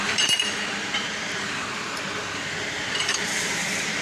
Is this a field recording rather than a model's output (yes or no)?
no